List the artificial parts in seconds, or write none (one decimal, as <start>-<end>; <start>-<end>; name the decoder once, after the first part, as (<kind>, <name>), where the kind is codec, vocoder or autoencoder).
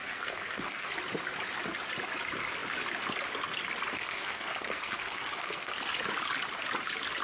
0.0-0.9 (codec, SNAC); 3.9-5.8